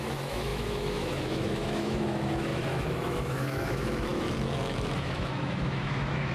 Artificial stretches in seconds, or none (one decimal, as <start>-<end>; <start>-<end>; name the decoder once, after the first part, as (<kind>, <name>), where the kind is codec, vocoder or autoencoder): 0.0-6.3 (autoencoder, DAC-VAE)